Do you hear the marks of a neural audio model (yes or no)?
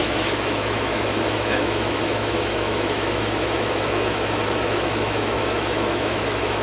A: yes